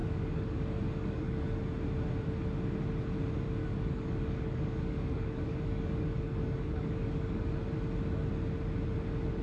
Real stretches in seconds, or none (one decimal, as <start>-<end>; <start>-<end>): 1.6-3.6; 7.5-9.4